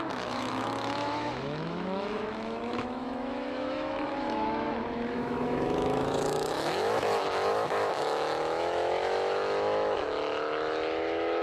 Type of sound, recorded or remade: remade